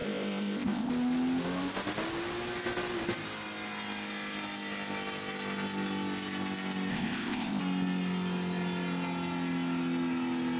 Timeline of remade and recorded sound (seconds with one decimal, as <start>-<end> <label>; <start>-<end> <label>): 0.0-0.9 remade; 0.9-6.9 recorded; 6.9-7.6 remade; 7.6-10.6 recorded